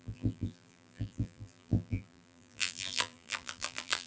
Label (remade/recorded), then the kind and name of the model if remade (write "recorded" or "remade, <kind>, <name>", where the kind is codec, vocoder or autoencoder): remade, vocoder, BigVGAN v2